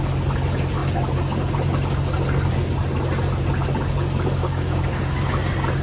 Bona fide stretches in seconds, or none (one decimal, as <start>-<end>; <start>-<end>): 0.0-4.4; 5.3-5.8